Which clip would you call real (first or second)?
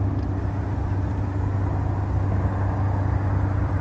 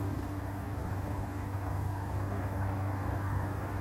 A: first